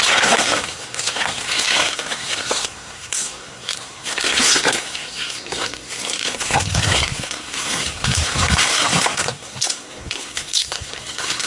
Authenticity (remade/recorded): remade